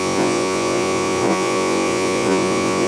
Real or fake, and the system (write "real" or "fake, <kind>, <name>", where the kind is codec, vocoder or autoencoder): fake, vocoder, Vocos